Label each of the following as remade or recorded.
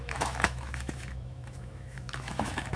remade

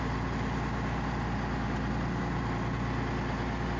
recorded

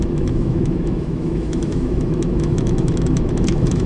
remade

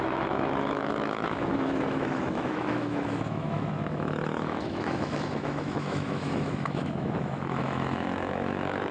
remade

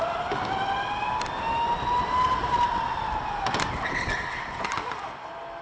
recorded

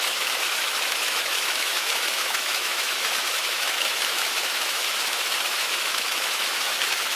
remade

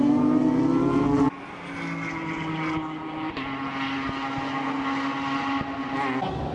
recorded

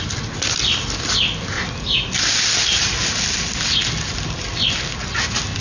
recorded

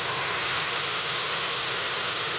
remade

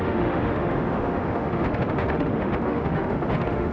remade